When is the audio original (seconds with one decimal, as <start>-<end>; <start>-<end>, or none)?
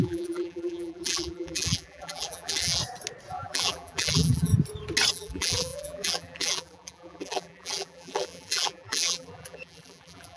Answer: 2.8-3.3; 4.5-5.1